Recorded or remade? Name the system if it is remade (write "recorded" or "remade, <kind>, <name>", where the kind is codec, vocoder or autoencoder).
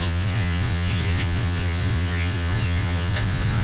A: remade, vocoder, Vocos